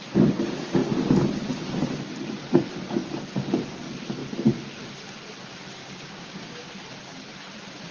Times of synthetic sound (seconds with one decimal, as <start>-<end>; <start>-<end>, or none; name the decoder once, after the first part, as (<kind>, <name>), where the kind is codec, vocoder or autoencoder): 5.8-6.7 (codec, DAC)